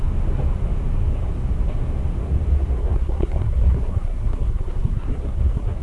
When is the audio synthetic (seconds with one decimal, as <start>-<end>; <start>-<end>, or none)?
2.8-5.8